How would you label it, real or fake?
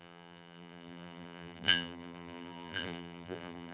fake